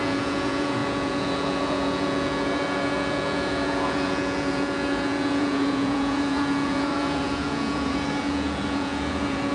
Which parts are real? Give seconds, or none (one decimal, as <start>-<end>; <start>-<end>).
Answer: none